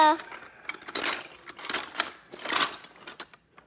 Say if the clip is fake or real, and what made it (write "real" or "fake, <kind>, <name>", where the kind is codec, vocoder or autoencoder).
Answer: real